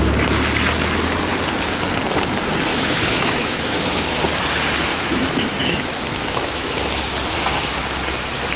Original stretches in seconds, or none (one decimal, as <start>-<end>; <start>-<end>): 0.0-2.7; 4.2-4.9; 6.8-8.6